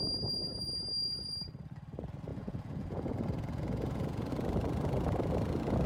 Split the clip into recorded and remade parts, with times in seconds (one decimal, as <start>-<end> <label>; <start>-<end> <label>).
0.0-2.3 recorded; 2.3-4.3 remade; 4.3-5.9 recorded